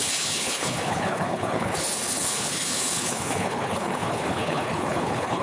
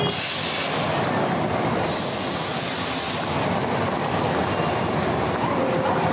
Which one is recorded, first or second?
second